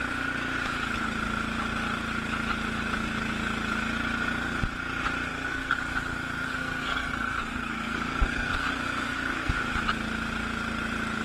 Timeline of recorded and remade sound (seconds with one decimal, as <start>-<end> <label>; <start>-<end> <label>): 0.0-5.3 recorded; 5.3-5.8 remade; 5.8-6.5 recorded; 6.5-9.5 remade; 9.5-11.2 recorded